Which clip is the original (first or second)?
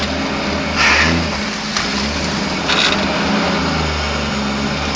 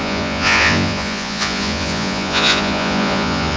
first